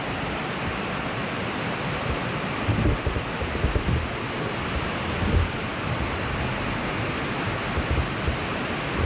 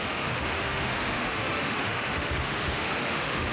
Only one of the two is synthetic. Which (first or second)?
second